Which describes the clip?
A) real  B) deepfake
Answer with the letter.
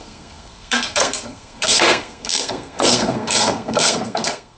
B